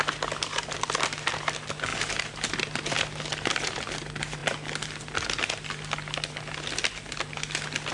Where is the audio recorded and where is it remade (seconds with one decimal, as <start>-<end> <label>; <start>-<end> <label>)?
0.0-7.9 recorded